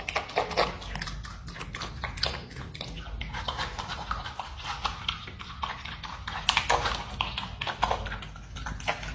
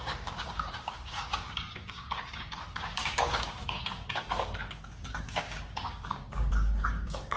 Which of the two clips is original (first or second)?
first